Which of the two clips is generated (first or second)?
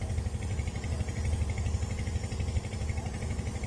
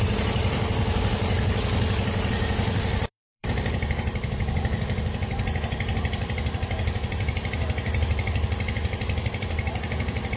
second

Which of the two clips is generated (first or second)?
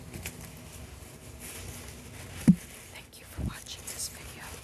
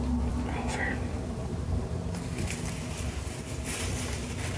second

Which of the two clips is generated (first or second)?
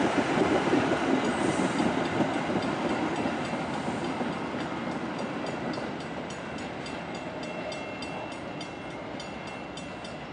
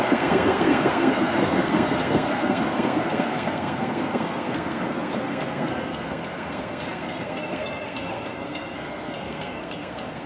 second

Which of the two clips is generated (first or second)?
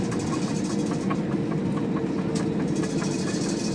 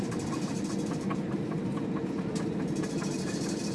second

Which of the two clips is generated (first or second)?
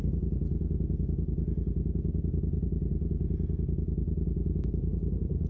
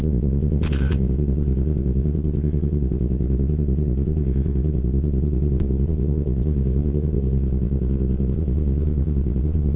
second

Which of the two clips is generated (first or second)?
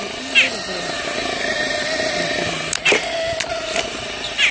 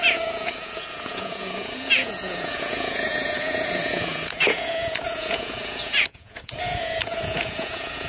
second